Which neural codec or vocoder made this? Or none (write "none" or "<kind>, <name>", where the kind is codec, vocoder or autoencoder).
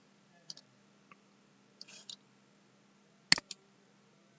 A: none